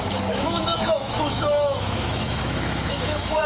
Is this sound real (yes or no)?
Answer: no